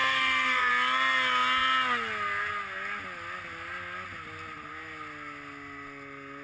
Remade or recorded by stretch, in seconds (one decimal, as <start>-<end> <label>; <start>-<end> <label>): 0.0-0.7 remade; 0.7-6.4 recorded